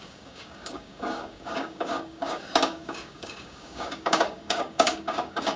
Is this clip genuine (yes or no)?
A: no